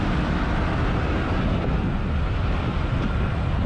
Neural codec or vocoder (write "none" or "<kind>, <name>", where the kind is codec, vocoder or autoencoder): none